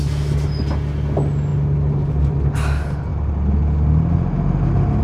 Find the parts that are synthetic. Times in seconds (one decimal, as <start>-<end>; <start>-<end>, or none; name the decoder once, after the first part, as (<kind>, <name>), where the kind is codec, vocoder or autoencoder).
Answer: none